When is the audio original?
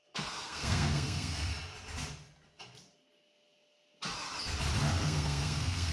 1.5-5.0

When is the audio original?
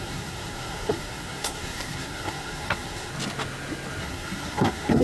3.1-4.0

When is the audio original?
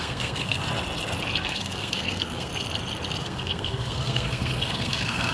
0.6-1.4; 2.5-3.2